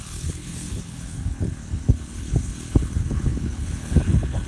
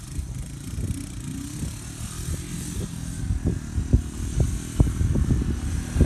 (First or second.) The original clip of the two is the second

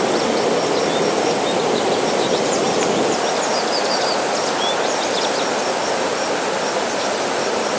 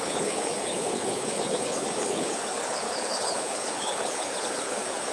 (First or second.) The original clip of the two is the first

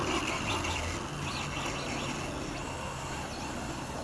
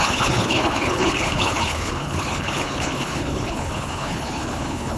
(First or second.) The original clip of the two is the first